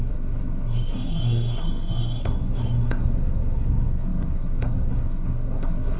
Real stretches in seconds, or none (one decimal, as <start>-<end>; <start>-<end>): none